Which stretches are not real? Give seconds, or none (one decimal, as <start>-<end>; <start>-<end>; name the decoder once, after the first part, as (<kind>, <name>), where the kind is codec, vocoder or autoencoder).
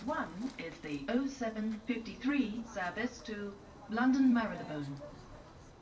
0.0-2.7 (vocoder, BigVGAN v2); 3.6-5.8